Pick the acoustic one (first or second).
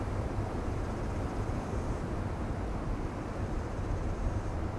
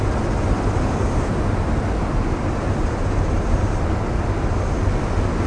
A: second